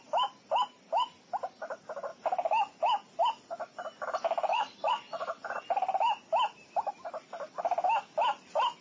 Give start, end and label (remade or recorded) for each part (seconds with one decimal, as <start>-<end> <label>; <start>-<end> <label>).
0.0-4.5 recorded; 4.5-5.6 remade; 5.6-8.8 recorded